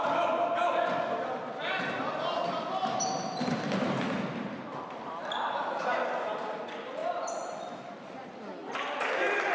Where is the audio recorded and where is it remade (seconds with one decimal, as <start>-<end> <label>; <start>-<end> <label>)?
0.0-7.0 recorded; 7.0-7.9 remade; 7.9-8.6 recorded; 8.6-9.5 remade